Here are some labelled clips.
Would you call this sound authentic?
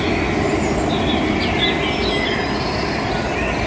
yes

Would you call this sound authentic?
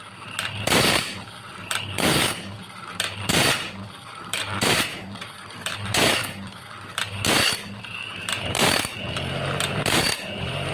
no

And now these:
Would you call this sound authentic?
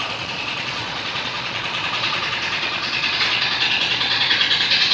no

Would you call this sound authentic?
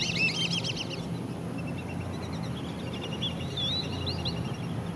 yes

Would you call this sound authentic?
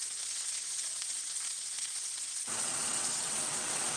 no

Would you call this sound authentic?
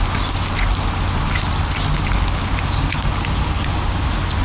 yes